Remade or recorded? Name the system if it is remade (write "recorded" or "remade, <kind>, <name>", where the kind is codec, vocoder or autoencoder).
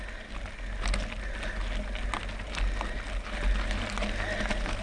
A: recorded